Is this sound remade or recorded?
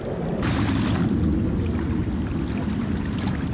recorded